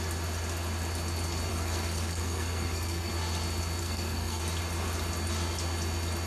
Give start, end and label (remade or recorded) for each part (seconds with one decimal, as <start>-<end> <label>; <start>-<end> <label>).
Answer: 0.0-1.5 recorded; 1.5-3.1 remade; 3.1-3.8 recorded; 3.8-4.4 remade; 4.4-6.3 recorded